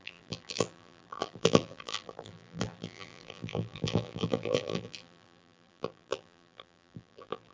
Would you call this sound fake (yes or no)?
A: yes